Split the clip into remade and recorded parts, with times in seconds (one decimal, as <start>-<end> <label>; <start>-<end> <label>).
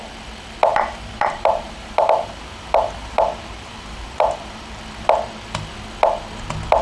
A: 0.0-0.7 recorded; 0.7-4.8 remade; 4.8-6.8 recorded